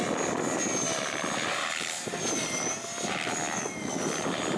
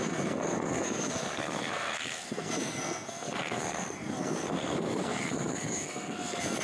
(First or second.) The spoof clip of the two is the second